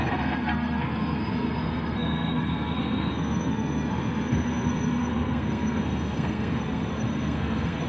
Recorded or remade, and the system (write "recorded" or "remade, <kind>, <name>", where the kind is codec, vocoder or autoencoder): remade, codec, SNAC